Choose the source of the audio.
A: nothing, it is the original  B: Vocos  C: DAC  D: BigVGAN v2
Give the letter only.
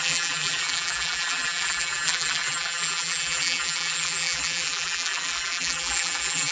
D